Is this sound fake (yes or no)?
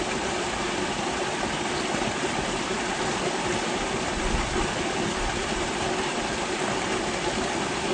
yes